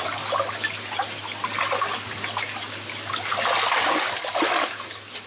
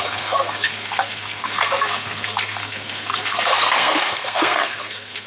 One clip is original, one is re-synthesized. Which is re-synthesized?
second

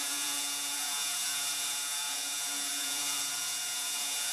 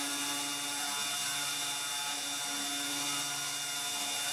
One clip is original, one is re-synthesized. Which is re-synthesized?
first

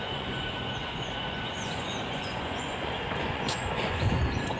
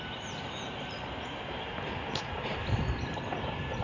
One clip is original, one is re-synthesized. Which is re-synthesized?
first